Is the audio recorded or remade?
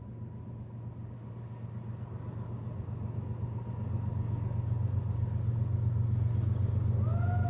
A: recorded